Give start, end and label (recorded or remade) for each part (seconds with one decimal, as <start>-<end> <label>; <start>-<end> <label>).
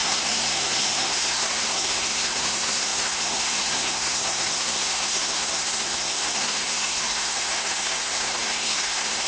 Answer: 0.0-9.3 remade